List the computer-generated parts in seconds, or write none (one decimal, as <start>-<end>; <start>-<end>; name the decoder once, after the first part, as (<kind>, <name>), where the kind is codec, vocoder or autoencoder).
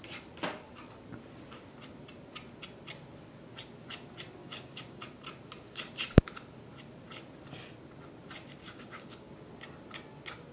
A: 4.4-5.0 (codec, DAC); 8.6-9.5